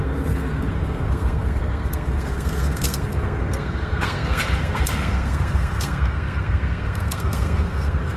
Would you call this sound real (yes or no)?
no